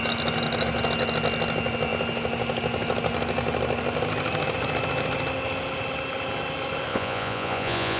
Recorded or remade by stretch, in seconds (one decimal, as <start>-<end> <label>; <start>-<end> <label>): 0.0-6.9 recorded; 6.9-8.0 remade